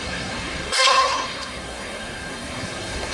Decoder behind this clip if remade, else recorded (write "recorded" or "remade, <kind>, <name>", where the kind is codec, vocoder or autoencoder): remade, codec, SNAC